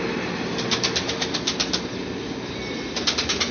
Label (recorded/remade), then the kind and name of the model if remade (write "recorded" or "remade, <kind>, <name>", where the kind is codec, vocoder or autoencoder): recorded